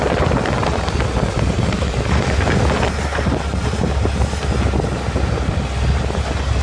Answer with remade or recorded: recorded